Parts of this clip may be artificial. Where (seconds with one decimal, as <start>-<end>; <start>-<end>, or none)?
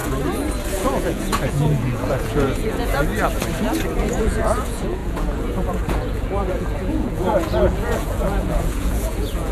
0.7-3.1; 4.2-9.5